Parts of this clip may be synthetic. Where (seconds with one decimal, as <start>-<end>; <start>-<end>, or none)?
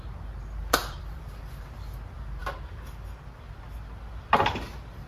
0.8-1.4